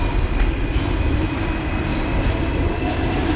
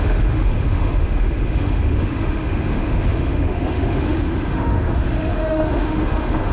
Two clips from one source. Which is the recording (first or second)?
first